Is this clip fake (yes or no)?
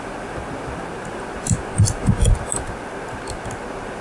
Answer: no